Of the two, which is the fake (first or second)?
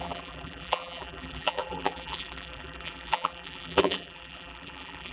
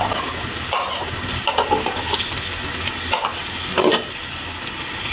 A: first